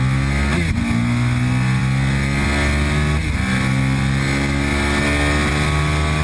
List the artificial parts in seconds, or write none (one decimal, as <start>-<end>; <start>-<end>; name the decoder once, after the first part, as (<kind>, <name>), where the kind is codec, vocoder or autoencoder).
none

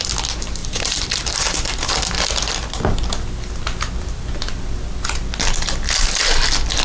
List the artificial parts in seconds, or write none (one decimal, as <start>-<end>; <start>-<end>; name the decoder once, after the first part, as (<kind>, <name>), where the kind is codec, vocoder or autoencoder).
0.6-1.9 (vocoder, BigVGAN v2)

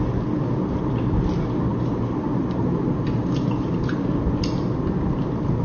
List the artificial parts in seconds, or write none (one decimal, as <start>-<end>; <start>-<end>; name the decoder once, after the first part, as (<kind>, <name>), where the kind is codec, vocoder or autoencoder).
1.7-3.9 (vocoder, BigVGAN v2)

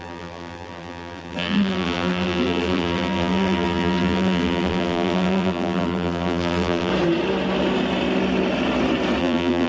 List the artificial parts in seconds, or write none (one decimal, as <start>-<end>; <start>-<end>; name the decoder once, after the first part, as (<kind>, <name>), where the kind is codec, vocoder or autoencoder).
0.0-6.9 (vocoder, BigVGAN v2); 9.2-9.7

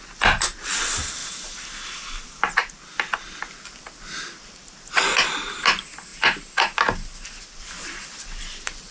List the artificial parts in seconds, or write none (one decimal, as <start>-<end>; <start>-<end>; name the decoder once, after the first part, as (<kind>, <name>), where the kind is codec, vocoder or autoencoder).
0.0-1.2 (vocoder, BigVGAN v2); 2.4-6.1; 7.6-8.9

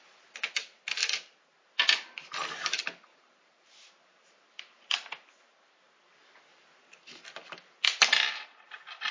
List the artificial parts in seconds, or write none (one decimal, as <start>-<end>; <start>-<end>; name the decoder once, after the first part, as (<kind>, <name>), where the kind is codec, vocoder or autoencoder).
3.1-5.3 (vocoder, BigVGAN v2)

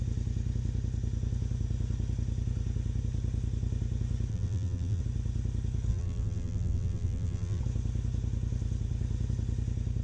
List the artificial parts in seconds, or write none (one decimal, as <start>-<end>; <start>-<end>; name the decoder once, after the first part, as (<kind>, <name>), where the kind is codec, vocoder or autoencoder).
4.3-5.0 (vocoder, BigVGAN v2); 5.9-7.6

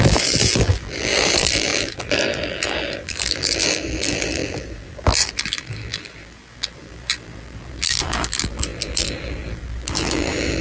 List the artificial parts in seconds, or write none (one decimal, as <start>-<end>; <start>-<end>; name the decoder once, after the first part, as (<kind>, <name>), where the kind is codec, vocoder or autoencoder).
0.0-10.6 (vocoder, BigVGAN v2)